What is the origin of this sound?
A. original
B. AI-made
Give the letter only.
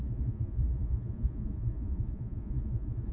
B